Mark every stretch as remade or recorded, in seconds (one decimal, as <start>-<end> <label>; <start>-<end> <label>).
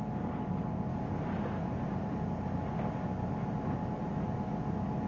0.0-5.1 recorded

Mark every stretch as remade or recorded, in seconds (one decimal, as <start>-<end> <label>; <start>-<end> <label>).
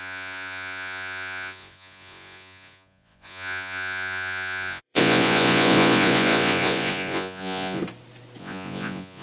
0.0-7.8 remade; 7.8-8.4 recorded; 8.4-9.2 remade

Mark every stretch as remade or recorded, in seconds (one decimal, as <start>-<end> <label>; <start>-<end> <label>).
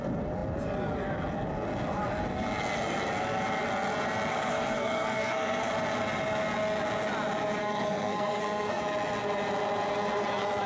0.0-4.3 recorded; 4.3-5.7 remade; 5.7-7.6 recorded; 7.6-8.8 remade; 8.8-10.7 recorded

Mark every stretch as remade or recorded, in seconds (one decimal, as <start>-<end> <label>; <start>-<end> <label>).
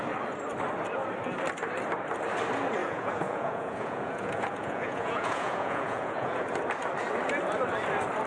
0.0-2.8 recorded; 2.8-6.3 remade; 6.3-8.3 recorded